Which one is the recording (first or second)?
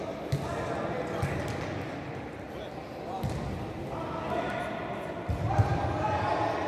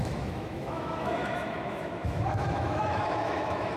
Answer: first